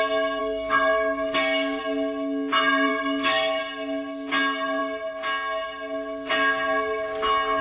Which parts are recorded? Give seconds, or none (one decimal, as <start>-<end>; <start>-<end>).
0.0-0.4; 1.8-2.9; 3.6-7.6